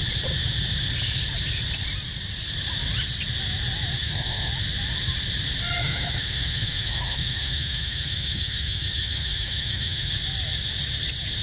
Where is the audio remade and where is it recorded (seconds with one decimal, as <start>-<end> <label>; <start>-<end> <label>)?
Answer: 0.0-4.0 recorded; 4.0-4.5 remade; 4.5-5.8 recorded; 5.8-10.1 remade; 10.1-11.4 recorded